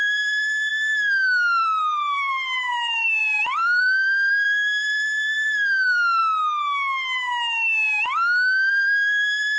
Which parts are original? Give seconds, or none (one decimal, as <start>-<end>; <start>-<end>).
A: 6.2-8.7